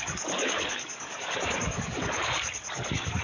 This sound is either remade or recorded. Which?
remade